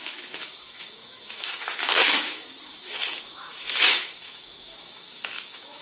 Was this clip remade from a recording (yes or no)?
yes